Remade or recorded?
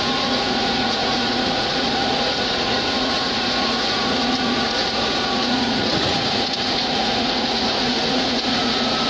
remade